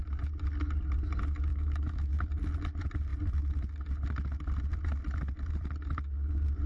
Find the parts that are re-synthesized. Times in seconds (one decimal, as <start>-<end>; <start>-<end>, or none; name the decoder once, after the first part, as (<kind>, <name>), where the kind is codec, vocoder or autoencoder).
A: 1.5-2.1 (autoencoder, DAC-VAE)